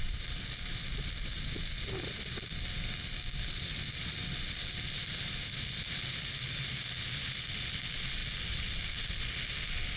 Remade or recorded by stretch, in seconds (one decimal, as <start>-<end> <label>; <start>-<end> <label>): 0.0-10.0 recorded